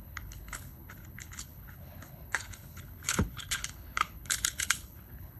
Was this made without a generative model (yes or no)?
no